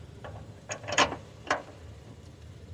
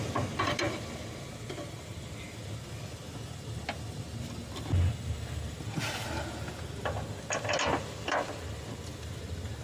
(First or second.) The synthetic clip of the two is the first